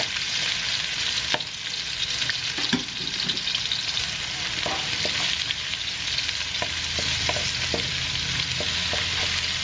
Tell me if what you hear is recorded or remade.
recorded